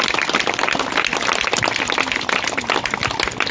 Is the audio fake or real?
real